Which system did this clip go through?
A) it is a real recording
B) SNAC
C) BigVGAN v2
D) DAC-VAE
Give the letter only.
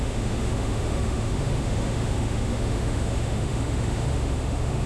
D